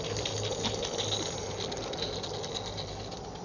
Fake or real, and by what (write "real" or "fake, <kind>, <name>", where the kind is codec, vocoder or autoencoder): real